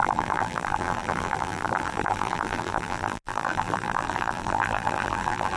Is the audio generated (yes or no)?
yes